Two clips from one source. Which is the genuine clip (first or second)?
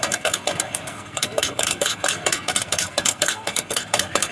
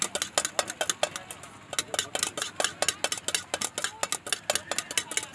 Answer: second